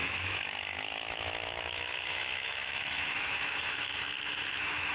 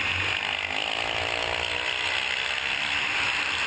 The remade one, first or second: first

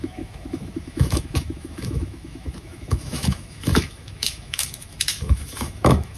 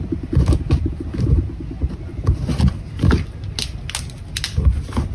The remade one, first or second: first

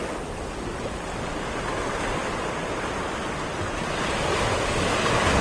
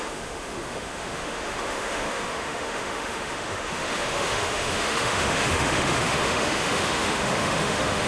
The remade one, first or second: second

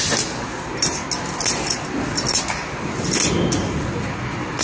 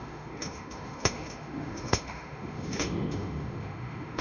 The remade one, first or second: second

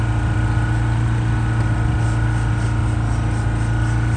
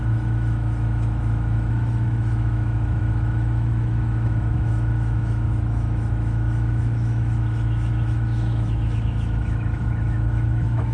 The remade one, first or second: second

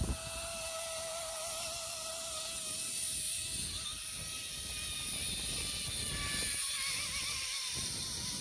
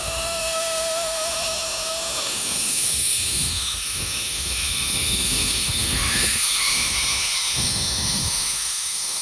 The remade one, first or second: second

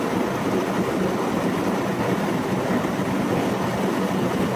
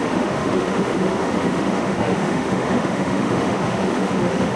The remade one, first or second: second